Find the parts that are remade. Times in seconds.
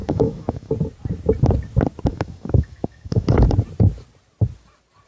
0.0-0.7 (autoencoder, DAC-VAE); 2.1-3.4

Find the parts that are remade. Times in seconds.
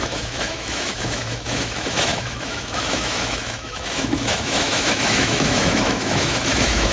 0.0-6.9 (autoencoder, DAC-VAE)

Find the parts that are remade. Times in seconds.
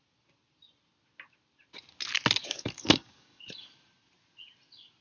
2.4-3.4 (codec, DAC)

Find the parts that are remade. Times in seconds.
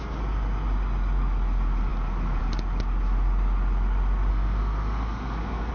4.3-5.7 (codec, SNAC)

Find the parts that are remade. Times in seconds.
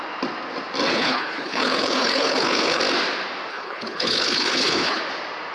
0.9-2.8 (codec, HILCodec); 3.5-5.0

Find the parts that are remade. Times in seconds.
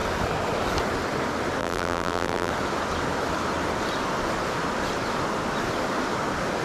1.6-2.5 (vocoder, BigVGAN v2)